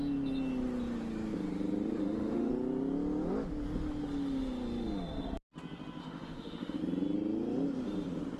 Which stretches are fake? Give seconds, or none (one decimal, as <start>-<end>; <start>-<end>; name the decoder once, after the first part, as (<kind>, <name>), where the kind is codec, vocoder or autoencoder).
2.0-2.5 (autoencoder, DAC-VAE); 6.0-6.8